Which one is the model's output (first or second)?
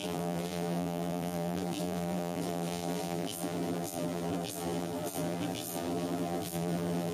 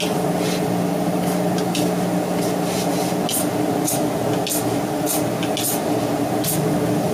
first